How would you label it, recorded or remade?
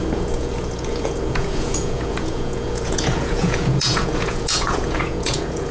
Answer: remade